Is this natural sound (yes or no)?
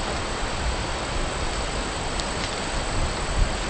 yes